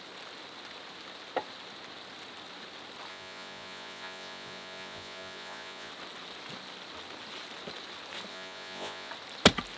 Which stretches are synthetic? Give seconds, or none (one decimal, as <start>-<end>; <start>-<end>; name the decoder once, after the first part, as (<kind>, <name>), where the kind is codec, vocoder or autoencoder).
3.1-5.9 (vocoder, Vocos); 8.3-9.1